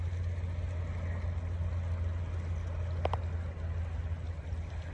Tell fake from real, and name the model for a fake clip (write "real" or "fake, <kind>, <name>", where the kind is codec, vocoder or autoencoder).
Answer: real